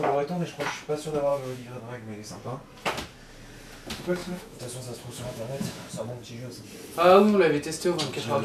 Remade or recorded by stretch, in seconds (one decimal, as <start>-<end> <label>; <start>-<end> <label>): 0.0-1.3 recorded; 1.3-2.3 remade; 2.3-4.2 recorded; 4.2-5.9 remade; 5.9-8.4 recorded